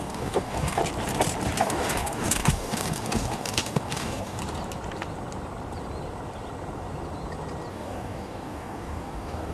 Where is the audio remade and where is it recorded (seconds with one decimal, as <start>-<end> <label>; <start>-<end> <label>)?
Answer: 0.0-0.8 remade; 0.8-1.6 recorded; 1.6-4.4 remade; 4.4-7.7 recorded; 7.7-9.5 remade